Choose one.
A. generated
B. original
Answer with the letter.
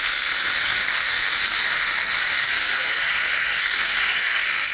A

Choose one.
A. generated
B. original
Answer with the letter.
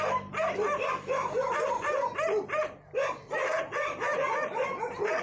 B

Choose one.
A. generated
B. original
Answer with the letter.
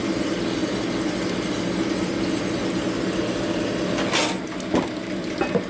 B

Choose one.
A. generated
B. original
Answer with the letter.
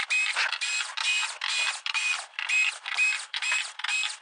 B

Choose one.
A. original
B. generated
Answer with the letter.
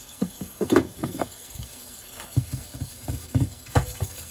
B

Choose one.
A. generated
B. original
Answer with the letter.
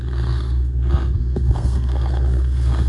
A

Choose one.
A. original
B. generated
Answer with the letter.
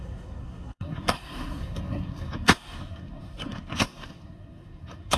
B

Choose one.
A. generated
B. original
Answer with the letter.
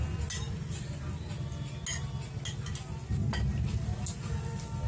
B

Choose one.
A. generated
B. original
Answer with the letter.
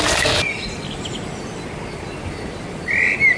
B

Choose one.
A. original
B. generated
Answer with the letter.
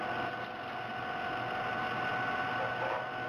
A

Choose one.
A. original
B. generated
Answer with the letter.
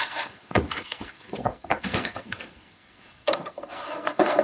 B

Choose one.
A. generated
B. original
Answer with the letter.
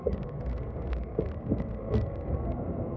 A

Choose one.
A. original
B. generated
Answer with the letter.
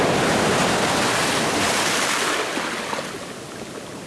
A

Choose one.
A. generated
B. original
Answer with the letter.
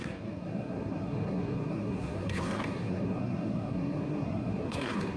A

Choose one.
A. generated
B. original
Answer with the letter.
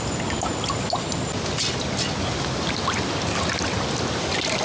B